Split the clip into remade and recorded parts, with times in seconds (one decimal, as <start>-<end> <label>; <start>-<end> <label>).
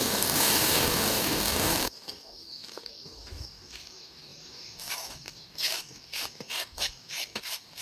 0.0-7.8 remade